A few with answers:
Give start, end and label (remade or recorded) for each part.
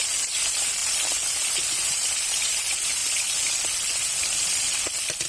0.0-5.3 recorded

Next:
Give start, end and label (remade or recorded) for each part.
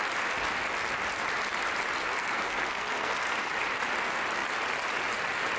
0.0-2.0 recorded; 2.0-3.5 remade; 3.5-5.6 recorded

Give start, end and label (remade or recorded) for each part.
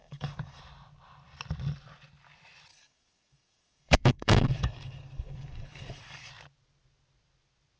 0.0-0.6 remade; 0.6-2.7 recorded; 2.7-6.3 remade; 6.3-7.8 recorded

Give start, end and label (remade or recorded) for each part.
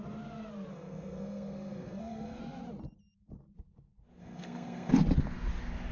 0.0-0.7 recorded; 0.7-2.4 remade; 2.4-4.2 recorded; 4.2-4.9 remade; 4.9-5.9 recorded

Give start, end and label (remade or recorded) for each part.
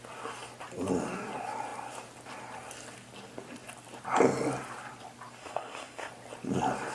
0.0-5.4 recorded; 5.4-6.1 remade; 6.1-6.9 recorded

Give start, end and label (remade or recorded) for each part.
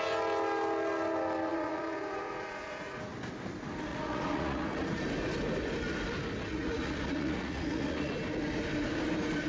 0.0-1.5 recorded; 1.5-3.0 remade; 3.0-3.9 recorded; 3.9-5.0 remade; 5.0-6.5 recorded; 6.5-8.1 remade; 8.1-9.5 recorded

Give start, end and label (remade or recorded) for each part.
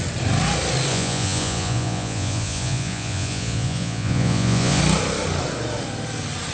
0.0-0.9 recorded; 0.9-4.8 remade; 4.8-6.5 recorded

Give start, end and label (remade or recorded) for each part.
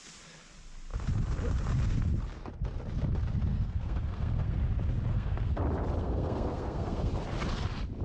0.0-3.5 recorded; 3.5-4.6 remade; 4.6-5.1 recorded; 5.1-5.6 remade; 5.6-6.0 recorded; 6.0-7.1 remade; 7.1-8.0 recorded